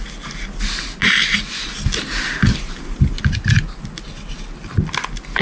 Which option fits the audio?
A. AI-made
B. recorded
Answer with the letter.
B